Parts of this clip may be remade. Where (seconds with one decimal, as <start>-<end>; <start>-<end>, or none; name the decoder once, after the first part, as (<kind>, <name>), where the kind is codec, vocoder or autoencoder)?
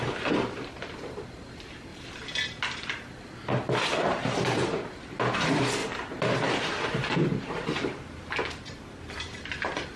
0.0-1.9 (vocoder, BigVGAN v2); 3.7-10.0